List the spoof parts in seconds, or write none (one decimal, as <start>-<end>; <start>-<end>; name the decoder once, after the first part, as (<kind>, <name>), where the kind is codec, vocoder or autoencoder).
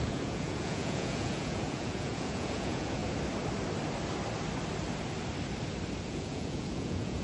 0.0-3.0 (vocoder, Vocos); 6.0-7.2